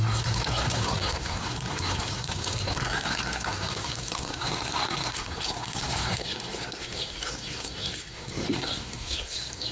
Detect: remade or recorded remade